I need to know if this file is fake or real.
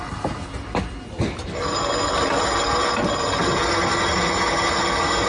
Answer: real